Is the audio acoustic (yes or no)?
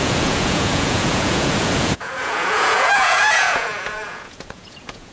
no